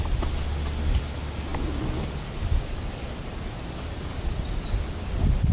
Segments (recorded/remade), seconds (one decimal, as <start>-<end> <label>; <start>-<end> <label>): 0.0-5.5 recorded